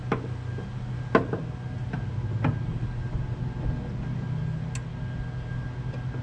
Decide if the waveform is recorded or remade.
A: recorded